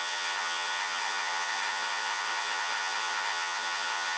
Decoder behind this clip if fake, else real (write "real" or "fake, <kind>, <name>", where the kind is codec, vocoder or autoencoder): fake, vocoder, HiFi-GAN